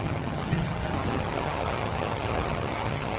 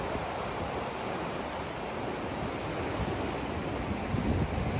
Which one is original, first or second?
second